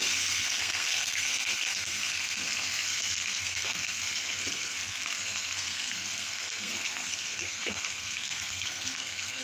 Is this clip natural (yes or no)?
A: no